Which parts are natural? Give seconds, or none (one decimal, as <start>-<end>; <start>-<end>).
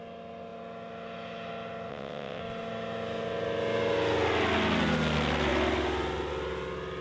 0.0-1.9; 2.4-7.0